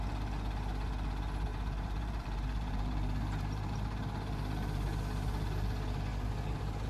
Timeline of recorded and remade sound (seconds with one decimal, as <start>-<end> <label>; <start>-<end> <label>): 0.0-1.5 recorded; 1.5-3.7 remade; 3.7-6.9 recorded